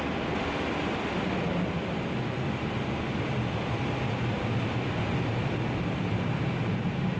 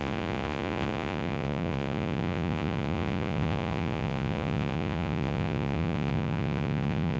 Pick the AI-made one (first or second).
second